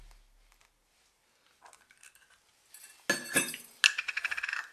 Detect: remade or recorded recorded